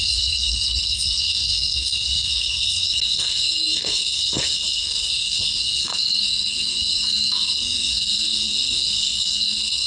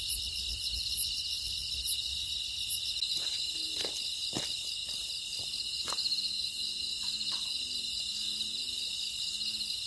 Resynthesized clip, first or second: first